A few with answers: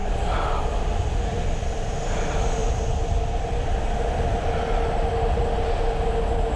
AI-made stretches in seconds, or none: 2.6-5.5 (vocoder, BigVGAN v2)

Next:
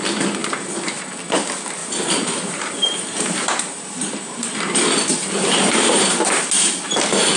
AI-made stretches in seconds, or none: 1.8-6.2 (vocoder, BigVGAN v2)

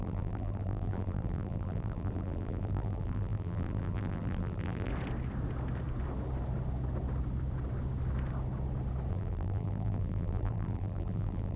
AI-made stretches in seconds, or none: 0.0-4.9 (vocoder, BigVGAN v2); 9.1-11.6

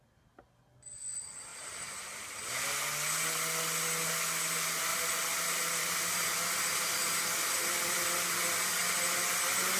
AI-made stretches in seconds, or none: 1.5-2.4 (vocoder, BigVGAN v2); 4.9-8.7

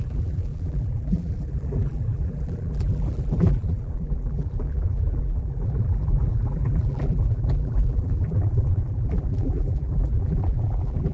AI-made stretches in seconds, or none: 0.0-11.1 (vocoder, BigVGAN v2)

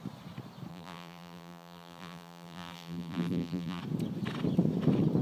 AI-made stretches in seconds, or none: 0.7-3.8 (vocoder, BigVGAN v2)